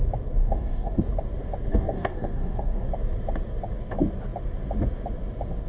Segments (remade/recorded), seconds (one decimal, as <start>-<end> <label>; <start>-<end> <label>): 0.0-0.4 recorded; 0.4-1.0 remade; 1.0-1.7 recorded; 1.7-2.9 remade; 2.9-5.7 recorded